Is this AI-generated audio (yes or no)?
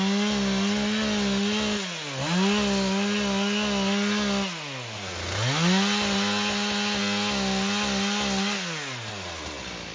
no